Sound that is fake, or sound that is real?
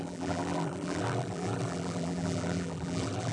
fake